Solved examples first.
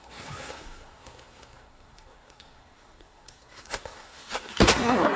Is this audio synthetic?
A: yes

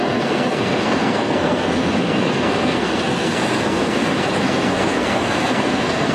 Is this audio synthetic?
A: yes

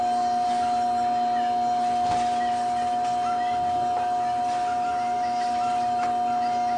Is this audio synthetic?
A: no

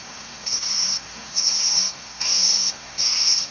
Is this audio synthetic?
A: yes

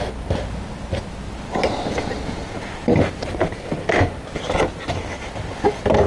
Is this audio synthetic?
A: no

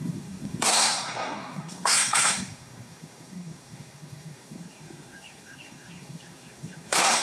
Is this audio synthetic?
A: yes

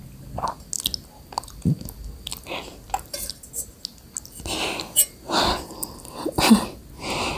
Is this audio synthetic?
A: no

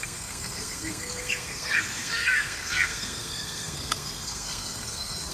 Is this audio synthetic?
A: yes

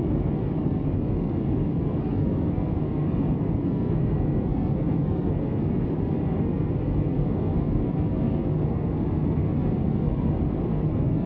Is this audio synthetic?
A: yes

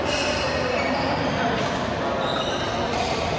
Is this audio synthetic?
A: no